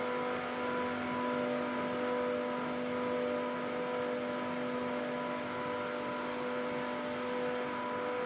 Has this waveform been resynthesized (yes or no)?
no